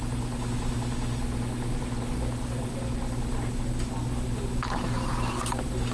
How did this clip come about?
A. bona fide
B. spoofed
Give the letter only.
A